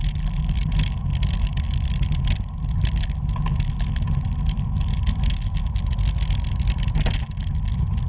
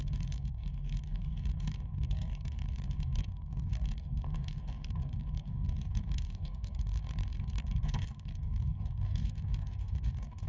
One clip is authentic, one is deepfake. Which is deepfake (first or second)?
second